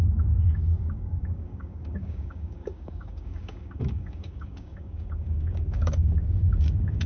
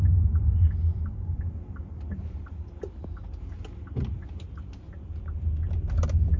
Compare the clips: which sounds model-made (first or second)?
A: first